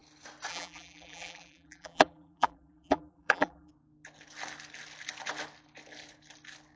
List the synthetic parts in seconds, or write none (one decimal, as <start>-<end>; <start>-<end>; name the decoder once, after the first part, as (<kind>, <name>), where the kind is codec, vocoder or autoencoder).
0.5-3.7 (vocoder, BigVGAN v2)